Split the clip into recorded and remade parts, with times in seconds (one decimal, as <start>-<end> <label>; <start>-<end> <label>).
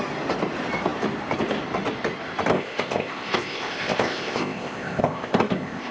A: 0.0-2.5 recorded; 2.5-5.9 remade